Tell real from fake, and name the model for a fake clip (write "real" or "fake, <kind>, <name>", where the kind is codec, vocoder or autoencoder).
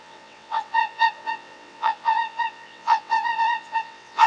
fake, vocoder, WaveNeXt